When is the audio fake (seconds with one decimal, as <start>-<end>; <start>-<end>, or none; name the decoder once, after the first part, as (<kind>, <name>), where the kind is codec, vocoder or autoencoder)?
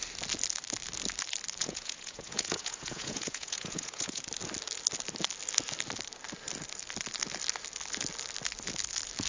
1.6-4.2 (vocoder, Vocos)